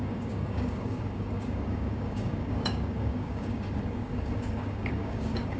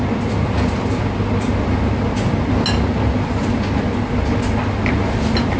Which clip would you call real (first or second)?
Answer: second